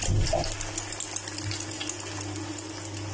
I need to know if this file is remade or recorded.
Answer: recorded